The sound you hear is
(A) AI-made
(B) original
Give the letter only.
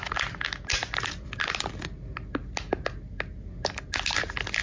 B